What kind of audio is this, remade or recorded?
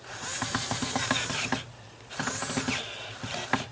recorded